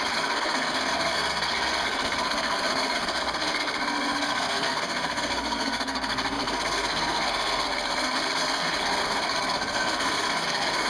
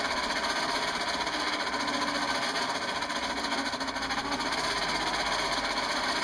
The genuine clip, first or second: second